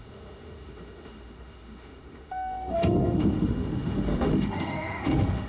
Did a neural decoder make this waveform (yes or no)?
yes